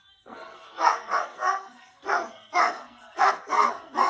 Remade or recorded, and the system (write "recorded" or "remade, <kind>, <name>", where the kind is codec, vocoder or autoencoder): remade, codec, SNAC